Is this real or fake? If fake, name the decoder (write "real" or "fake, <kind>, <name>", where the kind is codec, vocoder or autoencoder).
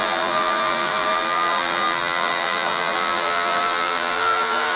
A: fake, vocoder, BigVGAN v2